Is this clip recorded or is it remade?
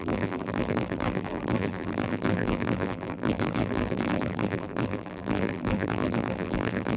remade